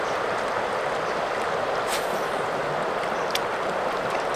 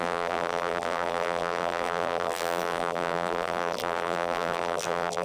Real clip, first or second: first